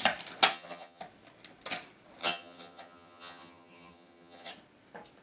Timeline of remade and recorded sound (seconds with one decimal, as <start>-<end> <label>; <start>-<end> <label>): 0.0-0.5 recorded; 0.5-1.0 remade; 1.0-2.2 recorded; 2.2-4.5 remade; 4.5-5.2 recorded